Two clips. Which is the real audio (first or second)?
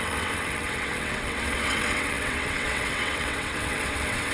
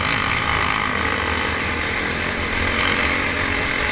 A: second